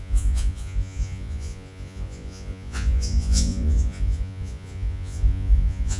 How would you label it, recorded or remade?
remade